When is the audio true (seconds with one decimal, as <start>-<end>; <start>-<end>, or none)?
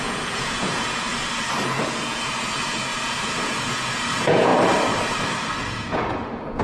1.1-1.6; 4.5-5.6